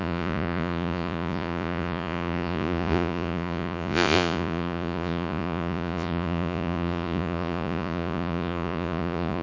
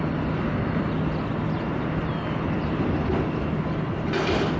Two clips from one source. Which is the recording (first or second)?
second